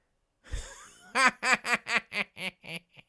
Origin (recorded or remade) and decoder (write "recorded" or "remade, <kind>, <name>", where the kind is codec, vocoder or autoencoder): recorded